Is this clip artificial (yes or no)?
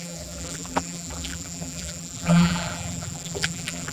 yes